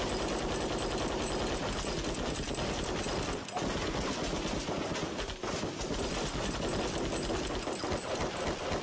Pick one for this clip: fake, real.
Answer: real